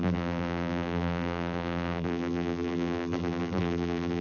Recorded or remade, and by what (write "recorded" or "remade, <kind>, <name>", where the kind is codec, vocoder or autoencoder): remade, vocoder, BigVGAN v2